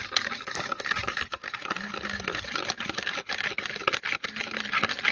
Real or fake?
real